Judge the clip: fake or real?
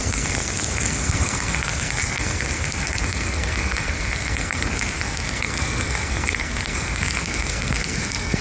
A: fake